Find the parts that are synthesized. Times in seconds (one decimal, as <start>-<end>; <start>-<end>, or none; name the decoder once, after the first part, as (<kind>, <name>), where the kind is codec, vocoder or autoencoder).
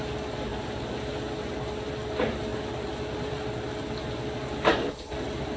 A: none